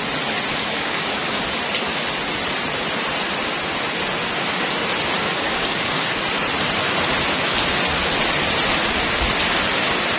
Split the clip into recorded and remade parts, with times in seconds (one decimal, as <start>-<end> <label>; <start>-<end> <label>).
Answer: 0.0-0.5 recorded; 0.5-1.4 remade; 1.4-5.2 recorded; 5.2-5.9 remade; 5.9-10.2 recorded